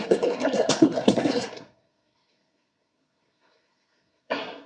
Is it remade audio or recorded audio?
remade